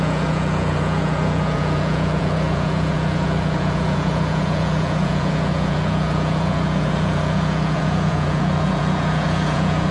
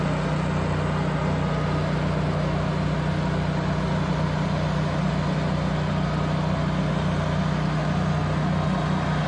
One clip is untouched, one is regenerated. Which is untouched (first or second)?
second